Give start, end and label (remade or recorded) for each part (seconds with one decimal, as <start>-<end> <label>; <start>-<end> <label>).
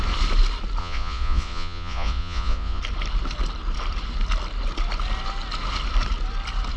0.0-0.8 recorded; 0.8-2.8 remade; 2.8-6.8 recorded